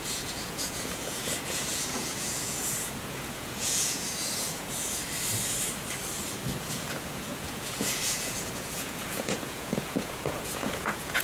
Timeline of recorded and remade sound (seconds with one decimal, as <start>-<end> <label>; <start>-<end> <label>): 0.0-5.0 remade; 5.0-6.6 recorded; 6.6-11.2 remade